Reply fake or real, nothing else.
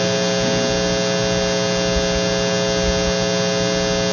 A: real